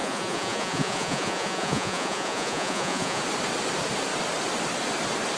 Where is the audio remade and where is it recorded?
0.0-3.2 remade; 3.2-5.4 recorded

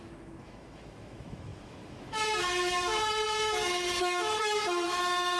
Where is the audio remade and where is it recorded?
0.0-5.4 remade

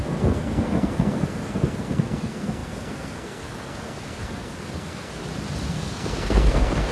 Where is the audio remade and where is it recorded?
0.0-5.2 remade; 5.2-5.7 recorded; 5.7-6.9 remade

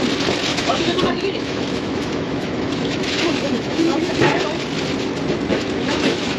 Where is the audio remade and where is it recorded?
0.0-0.5 recorded; 0.5-4.1 remade; 4.1-5.5 recorded; 5.5-6.4 remade

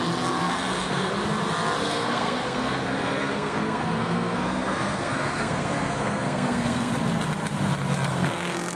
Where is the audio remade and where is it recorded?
0.0-0.4 recorded; 0.4-1.1 remade; 1.1-1.8 recorded; 1.8-6.9 remade; 6.9-8.1 recorded; 8.1-8.8 remade

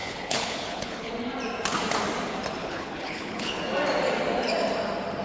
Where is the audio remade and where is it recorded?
0.0-1.1 remade; 1.1-2.6 recorded; 2.6-3.6 remade; 3.6-5.2 recorded